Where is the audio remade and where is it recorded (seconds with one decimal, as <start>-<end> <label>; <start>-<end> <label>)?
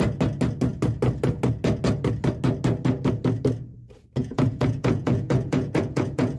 0.0-4.2 recorded; 4.2-6.4 remade